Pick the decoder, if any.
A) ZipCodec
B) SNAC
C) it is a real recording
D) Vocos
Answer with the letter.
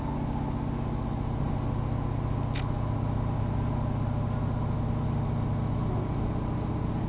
C